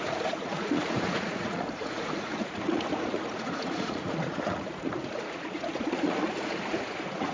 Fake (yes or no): yes